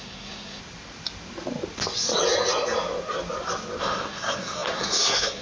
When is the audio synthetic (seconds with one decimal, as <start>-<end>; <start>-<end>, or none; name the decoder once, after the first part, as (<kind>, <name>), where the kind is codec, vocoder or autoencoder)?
0.0-0.6 (codec, SNAC); 3.8-5.4